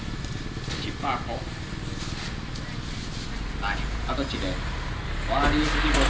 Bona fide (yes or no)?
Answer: yes